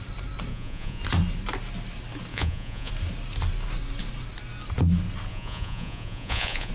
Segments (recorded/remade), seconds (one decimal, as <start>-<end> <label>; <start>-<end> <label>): 0.0-0.5 recorded; 0.5-1.0 remade; 1.0-2.3 recorded; 2.3-2.9 remade; 2.9-5.3 recorded; 5.3-6.7 remade